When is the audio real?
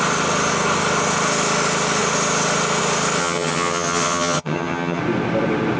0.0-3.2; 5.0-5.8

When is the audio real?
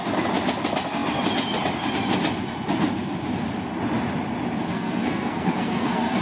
0.0-4.7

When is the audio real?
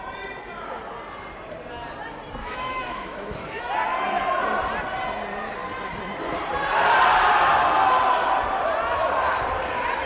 0.0-2.4; 3.6-10.1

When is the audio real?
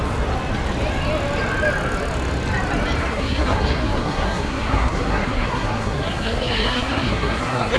0.0-3.0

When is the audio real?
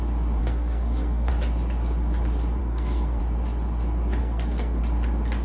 0.0-0.4; 1.3-2.6; 3.2-4.2; 4.8-5.4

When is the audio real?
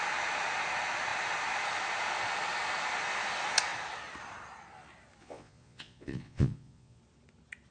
0.0-5.2; 7.0-7.7